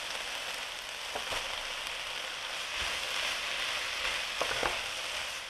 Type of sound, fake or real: real